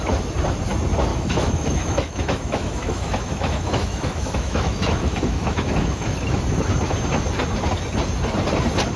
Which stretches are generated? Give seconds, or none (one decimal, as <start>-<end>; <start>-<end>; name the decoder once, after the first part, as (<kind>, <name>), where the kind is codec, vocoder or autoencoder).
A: 1.1-6.4 (autoencoder, DAC-VAE)